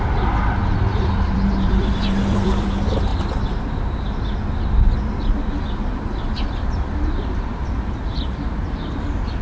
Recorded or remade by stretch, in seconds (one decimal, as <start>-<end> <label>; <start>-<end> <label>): 0.0-3.1 remade; 3.1-5.9 recorded; 5.9-8.1 remade; 8.1-8.6 recorded; 8.6-9.4 remade